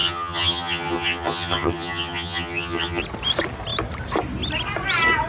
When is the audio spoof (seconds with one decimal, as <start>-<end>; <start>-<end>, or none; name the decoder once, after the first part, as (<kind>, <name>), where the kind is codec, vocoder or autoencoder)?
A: 0.0-3.0 (vocoder, HiFi-GAN)